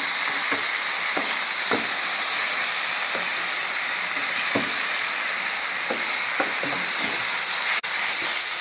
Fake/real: real